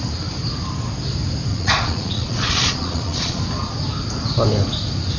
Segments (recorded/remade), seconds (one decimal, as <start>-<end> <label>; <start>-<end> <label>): 0.0-1.5 recorded; 1.5-3.4 remade; 3.4-5.2 recorded